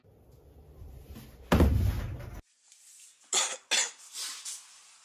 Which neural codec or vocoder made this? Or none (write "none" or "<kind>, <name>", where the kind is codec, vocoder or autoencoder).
none